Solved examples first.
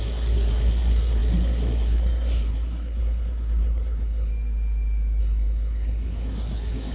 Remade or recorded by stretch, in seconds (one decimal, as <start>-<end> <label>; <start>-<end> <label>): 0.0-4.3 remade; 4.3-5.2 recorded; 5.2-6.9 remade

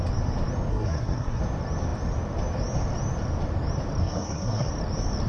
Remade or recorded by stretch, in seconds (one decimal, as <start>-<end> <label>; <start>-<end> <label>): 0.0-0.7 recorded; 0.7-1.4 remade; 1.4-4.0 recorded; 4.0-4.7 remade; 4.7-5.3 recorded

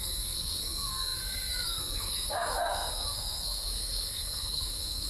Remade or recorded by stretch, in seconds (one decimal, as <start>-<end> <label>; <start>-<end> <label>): 0.0-5.1 remade

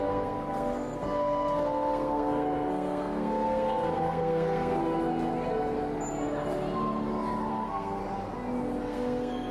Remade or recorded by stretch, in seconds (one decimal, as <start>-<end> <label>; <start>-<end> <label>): 0.0-4.8 remade; 4.8-7.5 recorded; 7.5-8.0 remade; 8.0-8.8 recorded; 8.8-9.5 remade

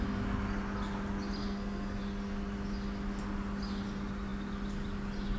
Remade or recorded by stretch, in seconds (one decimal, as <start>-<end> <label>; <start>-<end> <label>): 0.0-1.4 recorded; 1.4-2.0 remade; 2.0-5.4 recorded